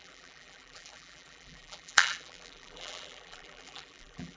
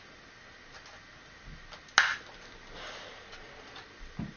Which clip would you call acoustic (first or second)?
second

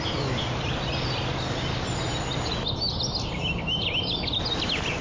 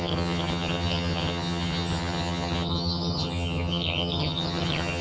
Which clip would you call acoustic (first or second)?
first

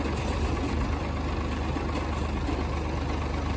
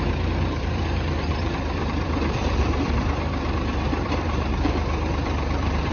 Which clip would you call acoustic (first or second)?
first